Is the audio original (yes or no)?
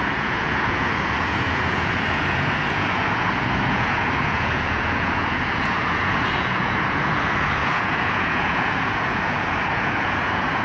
no